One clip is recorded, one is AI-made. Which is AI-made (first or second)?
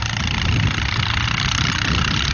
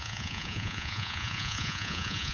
second